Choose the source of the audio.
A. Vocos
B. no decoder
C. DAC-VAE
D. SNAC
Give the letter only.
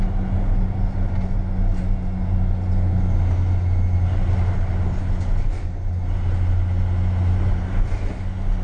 B